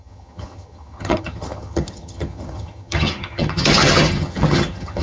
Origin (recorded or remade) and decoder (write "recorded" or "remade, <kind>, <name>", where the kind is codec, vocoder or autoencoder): remade, vocoder, HiFi-GAN